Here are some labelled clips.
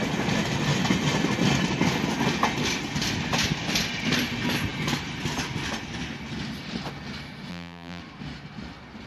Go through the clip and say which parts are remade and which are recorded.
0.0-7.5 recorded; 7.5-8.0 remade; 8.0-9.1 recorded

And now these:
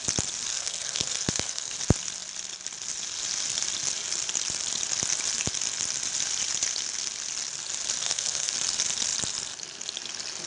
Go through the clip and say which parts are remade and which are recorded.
0.0-0.5 recorded; 0.5-1.7 remade; 1.7-8.0 recorded; 8.0-8.5 remade; 8.5-10.5 recorded

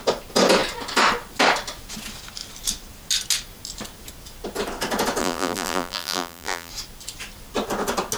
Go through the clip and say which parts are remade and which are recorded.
0.0-5.2 recorded; 5.2-6.7 remade; 6.7-8.2 recorded

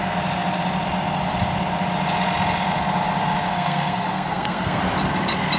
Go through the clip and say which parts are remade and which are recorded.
0.0-3.5 recorded; 3.5-4.8 remade; 4.8-5.6 recorded

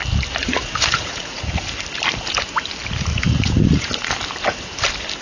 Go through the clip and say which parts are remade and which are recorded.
0.0-0.4 recorded; 0.4-1.6 remade; 1.6-3.1 recorded; 3.1-3.9 remade; 3.9-5.2 recorded

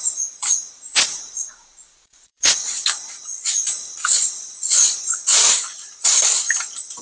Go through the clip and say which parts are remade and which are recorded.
0.0-0.9 recorded; 0.9-2.8 remade; 2.8-7.0 recorded

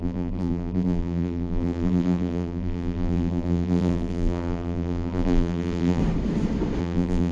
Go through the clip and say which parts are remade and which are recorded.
0.0-6.0 remade; 6.0-6.8 recorded; 6.8-7.3 remade

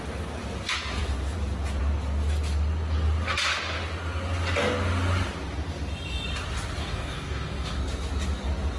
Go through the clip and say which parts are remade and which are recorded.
0.0-6.8 recorded; 6.8-7.8 remade; 7.8-8.8 recorded